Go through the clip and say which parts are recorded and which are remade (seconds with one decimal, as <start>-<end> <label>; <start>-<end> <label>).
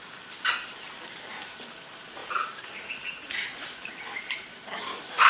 0.0-2.2 recorded; 2.2-3.8 remade; 3.8-5.3 recorded